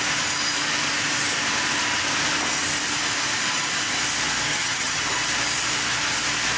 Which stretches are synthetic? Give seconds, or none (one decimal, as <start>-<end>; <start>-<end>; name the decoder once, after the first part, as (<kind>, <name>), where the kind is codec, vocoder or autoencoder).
4.5-5.0 (vocoder, HiFi-GAN)